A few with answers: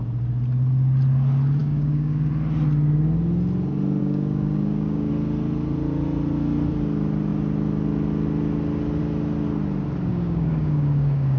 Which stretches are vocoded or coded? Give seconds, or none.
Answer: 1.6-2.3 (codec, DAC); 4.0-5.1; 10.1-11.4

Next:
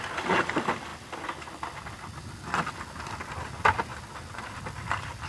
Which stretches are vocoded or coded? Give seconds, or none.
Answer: none

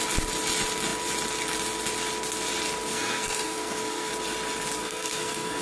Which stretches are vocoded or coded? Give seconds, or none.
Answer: 2.9-4.1 (codec, SNAC); 4.8-5.6

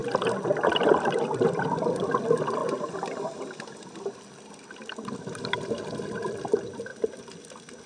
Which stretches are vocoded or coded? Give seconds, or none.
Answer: none

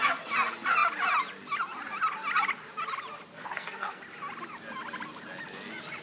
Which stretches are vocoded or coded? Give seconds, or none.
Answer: 3.3-4.0 (codec, SNAC)

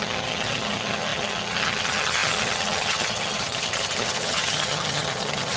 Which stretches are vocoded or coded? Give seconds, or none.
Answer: 0.0-5.6 (vocoder, HiFi-GAN)

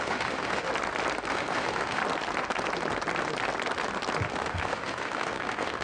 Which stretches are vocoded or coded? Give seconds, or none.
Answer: 0.0-0.7 (autoencoder, DAC-VAE); 1.3-2.0; 4.3-5.8

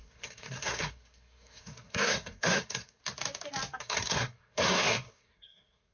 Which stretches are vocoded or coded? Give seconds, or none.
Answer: 0.0-3.0 (codec, SNAC); 3.8-5.9